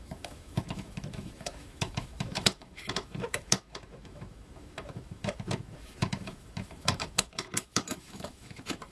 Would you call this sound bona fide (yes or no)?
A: no